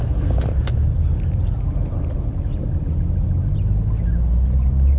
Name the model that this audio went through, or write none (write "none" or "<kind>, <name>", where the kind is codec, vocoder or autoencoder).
none